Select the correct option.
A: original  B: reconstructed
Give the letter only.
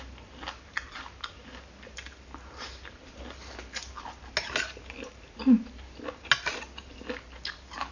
A